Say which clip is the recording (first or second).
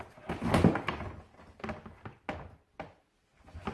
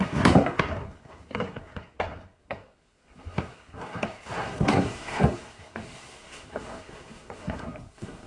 first